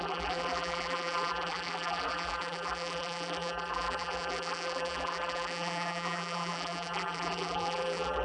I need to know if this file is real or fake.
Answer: fake